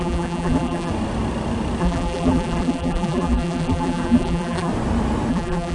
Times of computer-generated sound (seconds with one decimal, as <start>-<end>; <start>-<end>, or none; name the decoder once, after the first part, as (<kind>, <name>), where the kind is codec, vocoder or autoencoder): 0.0-0.9 (vocoder, BigVGAN v2); 1.8-4.7; 5.3-5.7